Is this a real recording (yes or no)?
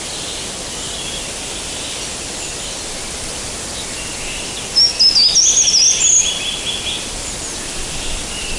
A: yes